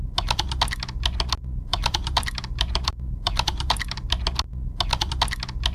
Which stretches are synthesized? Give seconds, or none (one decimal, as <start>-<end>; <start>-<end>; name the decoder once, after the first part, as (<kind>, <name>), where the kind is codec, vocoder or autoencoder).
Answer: 1.7-4.1 (vocoder, BigVGAN v2)